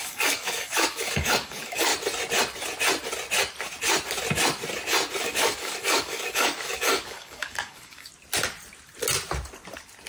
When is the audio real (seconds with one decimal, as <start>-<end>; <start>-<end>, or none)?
1.9-5.2; 8.1-10.1